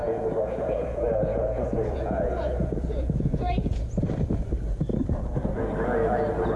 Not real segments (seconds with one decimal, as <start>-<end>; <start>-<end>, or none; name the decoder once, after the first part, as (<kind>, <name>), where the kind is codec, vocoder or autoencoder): 0.0-4.0 (vocoder, Vocos)